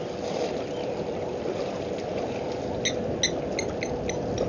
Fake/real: real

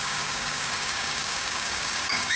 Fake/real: fake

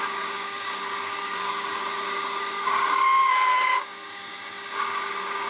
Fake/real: fake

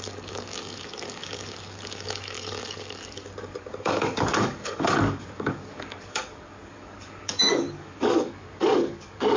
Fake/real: fake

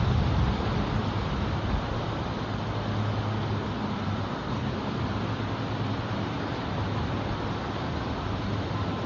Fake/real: real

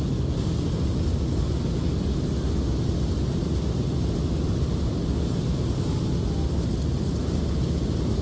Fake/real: real